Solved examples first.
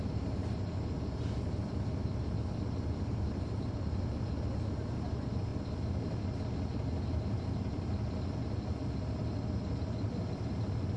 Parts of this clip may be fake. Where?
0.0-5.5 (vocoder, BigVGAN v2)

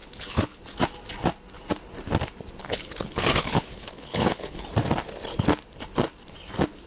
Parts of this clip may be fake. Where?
0.0-0.6 (codec, HILCodec); 2.6-4.6

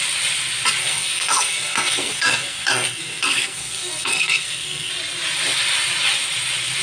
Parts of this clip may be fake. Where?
0.8-4.9 (codec, SNAC)

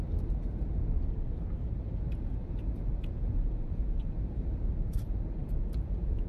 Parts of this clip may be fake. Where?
2.4-4.4 (vocoder, Vocos); 5.4-6.3